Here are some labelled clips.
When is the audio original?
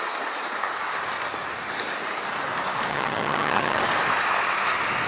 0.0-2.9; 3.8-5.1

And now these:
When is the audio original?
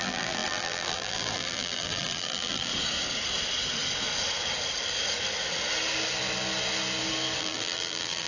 2.7-7.4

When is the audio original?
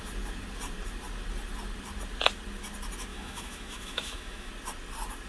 0.0-3.1; 4.5-5.3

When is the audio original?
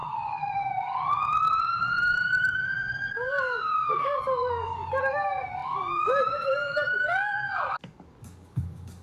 none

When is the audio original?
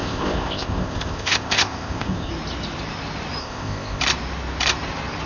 2.3-3.4; 4.0-5.3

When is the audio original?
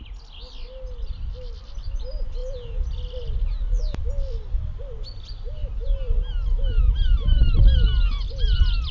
0.0-8.9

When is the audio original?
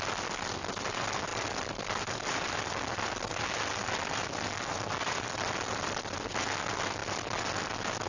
0.0-1.3; 6.0-8.1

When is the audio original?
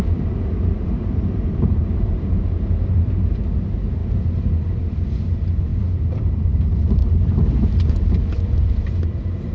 4.0-4.8; 7.0-7.9